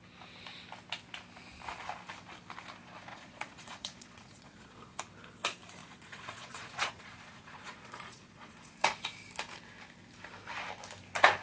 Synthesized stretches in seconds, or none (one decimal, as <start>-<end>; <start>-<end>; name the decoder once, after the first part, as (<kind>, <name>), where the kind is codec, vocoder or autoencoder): 3.1-5.0 (vocoder, Vocos); 5.8-8.7